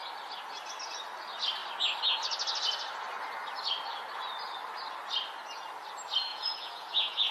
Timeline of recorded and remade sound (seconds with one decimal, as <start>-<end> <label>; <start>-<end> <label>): 0.0-6.3 recorded; 6.3-7.3 remade